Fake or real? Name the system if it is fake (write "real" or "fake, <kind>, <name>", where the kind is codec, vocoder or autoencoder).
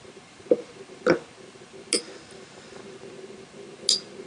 real